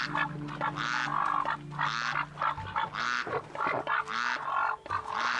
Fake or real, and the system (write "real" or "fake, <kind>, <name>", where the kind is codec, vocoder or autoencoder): real